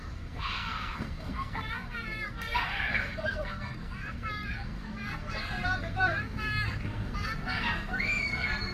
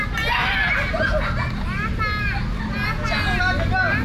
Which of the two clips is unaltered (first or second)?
second